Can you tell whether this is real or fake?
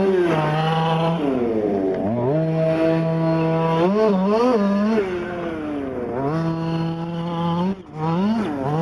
real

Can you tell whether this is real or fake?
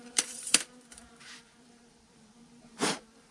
fake